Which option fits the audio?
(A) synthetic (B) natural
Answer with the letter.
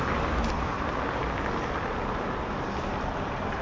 B